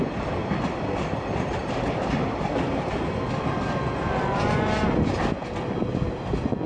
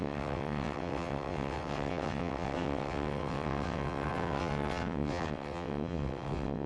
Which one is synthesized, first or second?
second